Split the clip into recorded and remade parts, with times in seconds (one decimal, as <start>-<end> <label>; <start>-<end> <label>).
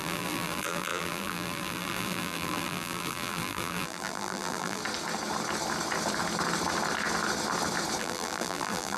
0.0-4.8 remade; 4.8-8.0 recorded; 8.0-9.0 remade